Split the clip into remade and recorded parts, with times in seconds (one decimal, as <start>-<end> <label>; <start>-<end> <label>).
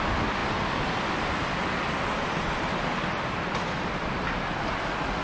0.0-5.2 recorded